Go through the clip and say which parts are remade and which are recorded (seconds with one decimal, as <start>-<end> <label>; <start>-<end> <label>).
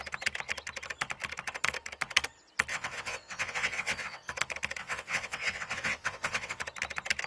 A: 0.0-2.7 recorded; 2.7-4.3 remade; 4.3-4.8 recorded; 4.8-6.6 remade; 6.6-7.3 recorded